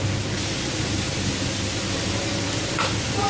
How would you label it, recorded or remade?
recorded